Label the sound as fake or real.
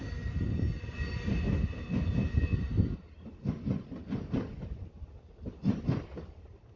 real